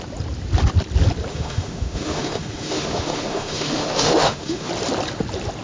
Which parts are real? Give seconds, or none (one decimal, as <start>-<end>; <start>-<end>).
0.0-1.3; 4.7-5.6